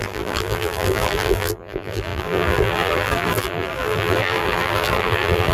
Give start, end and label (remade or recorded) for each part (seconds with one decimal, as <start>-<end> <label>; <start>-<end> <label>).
0.0-5.5 remade